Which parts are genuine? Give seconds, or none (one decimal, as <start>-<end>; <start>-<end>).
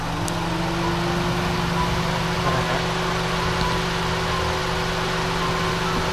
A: 0.0-6.1